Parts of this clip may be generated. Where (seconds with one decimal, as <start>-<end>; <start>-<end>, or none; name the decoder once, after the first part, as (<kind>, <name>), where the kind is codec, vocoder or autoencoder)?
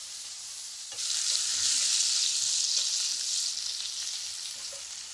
0.0-1.5 (vocoder, BigVGAN v2); 4.6-5.1